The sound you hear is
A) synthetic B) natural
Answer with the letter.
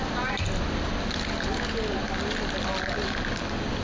B